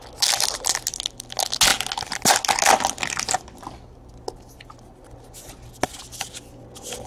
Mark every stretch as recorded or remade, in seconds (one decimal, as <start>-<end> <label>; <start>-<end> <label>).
0.0-7.1 recorded